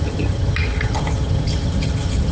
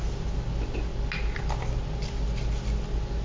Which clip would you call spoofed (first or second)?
first